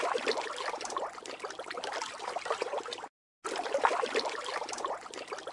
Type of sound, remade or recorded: recorded